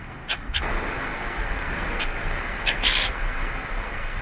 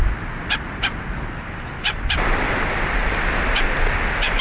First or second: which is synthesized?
first